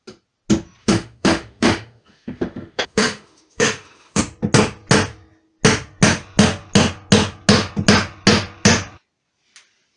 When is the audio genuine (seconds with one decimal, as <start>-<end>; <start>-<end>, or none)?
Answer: 0.0-0.8; 4.2-10.0